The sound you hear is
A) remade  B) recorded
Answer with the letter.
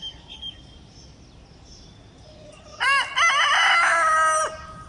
B